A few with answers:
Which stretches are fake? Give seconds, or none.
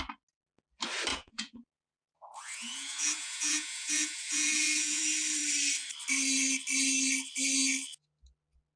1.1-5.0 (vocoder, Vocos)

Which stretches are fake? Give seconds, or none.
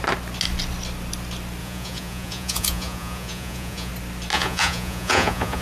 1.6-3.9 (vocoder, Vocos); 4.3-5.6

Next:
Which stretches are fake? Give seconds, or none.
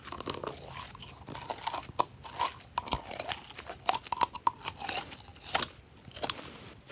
none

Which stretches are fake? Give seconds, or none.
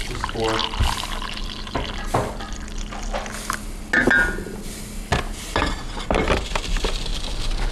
none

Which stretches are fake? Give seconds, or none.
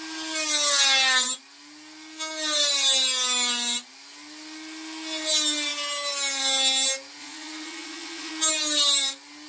7.2-8.3 (vocoder, Vocos)